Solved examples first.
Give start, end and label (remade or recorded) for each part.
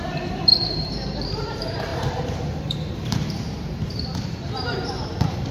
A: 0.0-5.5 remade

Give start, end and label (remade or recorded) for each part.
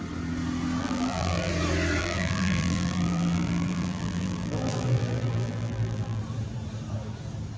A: 0.0-0.8 recorded; 0.8-1.5 remade; 1.5-2.0 recorded; 2.0-6.2 remade; 6.2-7.6 recorded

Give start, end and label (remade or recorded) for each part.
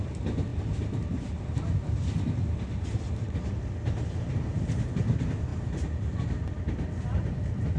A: 0.0-7.8 recorded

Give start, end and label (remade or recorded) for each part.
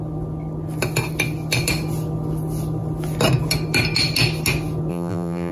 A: 0.0-4.9 recorded; 4.9-5.5 remade